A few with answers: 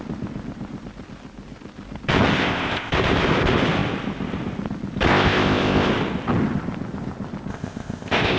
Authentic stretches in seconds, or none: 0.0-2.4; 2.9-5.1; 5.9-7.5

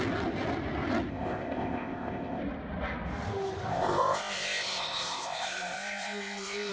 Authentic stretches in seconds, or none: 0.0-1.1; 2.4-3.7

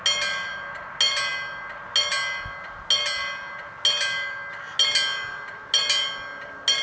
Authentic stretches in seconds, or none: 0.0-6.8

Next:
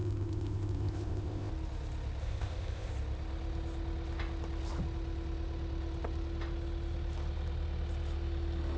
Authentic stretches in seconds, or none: 1.5-2.2; 2.9-8.8

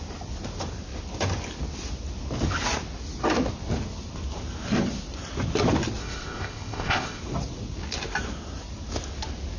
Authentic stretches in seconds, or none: 0.0-6.0; 7.2-9.6